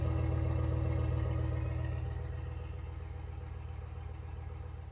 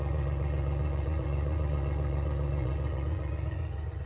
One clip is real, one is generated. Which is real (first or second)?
first